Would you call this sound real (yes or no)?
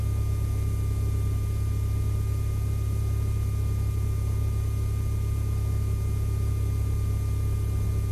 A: yes